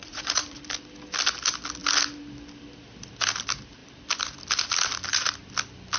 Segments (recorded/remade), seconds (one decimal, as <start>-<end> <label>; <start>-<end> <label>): 0.0-0.6 remade; 0.6-6.0 recorded